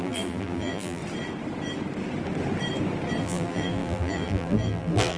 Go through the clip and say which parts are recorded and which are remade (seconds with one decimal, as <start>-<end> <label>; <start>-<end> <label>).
0.0-1.0 remade; 1.0-3.2 recorded; 3.2-5.2 remade